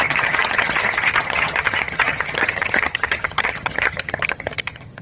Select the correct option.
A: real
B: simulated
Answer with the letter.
B